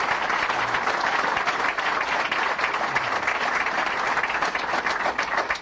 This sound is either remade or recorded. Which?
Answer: remade